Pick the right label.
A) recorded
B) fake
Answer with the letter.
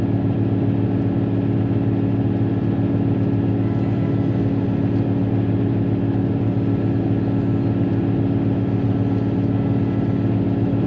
A